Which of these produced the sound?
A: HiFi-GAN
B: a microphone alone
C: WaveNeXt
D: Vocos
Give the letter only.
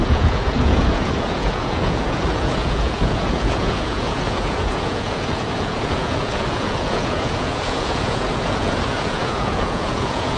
D